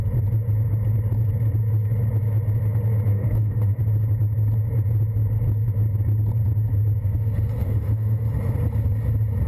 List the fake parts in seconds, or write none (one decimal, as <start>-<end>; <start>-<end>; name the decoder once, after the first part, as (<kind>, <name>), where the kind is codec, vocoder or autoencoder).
3.1-3.8 (autoencoder, DAC-VAE); 7.6-8.2